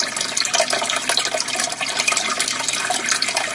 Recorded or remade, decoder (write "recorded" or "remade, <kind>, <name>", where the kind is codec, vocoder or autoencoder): recorded